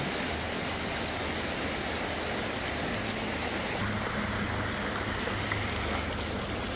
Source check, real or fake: real